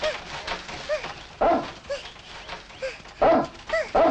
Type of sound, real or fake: real